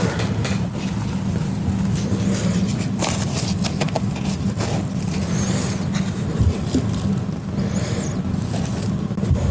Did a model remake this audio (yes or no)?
no